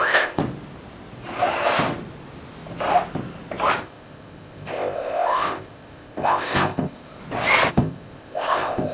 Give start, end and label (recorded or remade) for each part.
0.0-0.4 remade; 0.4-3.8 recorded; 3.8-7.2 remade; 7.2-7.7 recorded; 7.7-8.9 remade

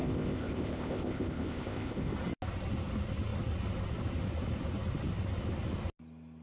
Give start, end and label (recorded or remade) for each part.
0.0-2.1 remade; 2.1-6.4 recorded